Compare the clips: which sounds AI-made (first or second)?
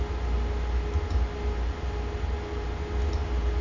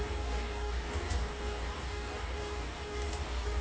second